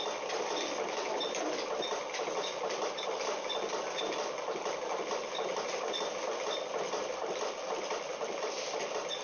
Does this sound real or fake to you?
real